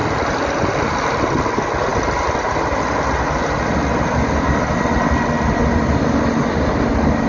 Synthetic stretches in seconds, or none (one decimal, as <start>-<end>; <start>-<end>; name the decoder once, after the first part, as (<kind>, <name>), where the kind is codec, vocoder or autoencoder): none